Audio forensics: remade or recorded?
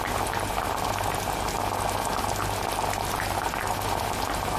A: recorded